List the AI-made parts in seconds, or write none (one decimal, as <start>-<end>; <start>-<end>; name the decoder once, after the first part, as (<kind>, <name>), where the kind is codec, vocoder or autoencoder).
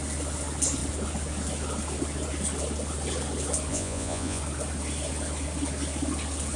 3.7-4.4 (vocoder, Vocos)